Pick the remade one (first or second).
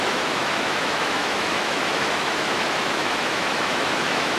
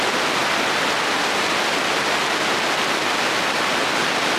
first